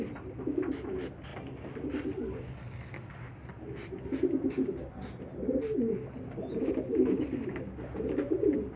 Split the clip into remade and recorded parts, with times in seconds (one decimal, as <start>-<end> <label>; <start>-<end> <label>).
0.0-8.8 recorded

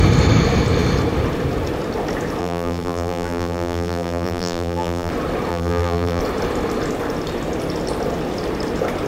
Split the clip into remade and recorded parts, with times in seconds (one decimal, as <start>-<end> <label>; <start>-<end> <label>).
0.0-2.4 recorded; 2.4-5.1 remade; 5.1-5.5 recorded; 5.5-6.2 remade; 6.2-9.1 recorded

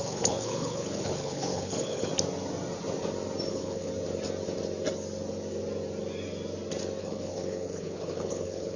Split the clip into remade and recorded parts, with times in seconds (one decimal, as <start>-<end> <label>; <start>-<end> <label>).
0.0-2.1 remade; 2.1-3.5 recorded; 3.5-3.9 remade; 3.9-7.0 recorded; 7.0-8.8 remade

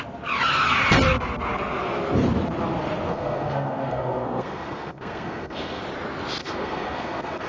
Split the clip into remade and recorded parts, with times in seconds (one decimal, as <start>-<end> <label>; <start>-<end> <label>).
0.0-3.1 recorded; 3.1-5.8 remade; 5.8-6.4 recorded; 6.4-7.5 remade

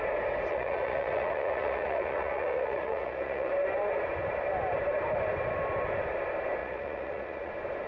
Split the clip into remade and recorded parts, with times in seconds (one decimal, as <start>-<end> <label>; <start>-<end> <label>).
0.0-0.5 recorded; 0.5-3.5 remade; 3.5-6.6 recorded; 6.6-7.5 remade; 7.5-7.9 recorded

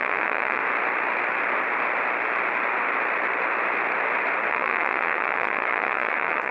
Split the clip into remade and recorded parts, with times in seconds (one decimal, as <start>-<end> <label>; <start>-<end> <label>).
0.0-0.6 remade; 0.6-4.5 recorded; 4.5-6.5 remade